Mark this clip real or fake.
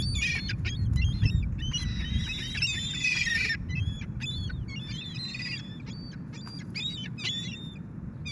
fake